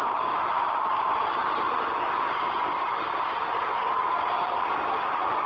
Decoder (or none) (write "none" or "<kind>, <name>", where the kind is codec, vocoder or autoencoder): none